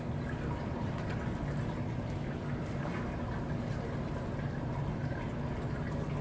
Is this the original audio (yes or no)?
yes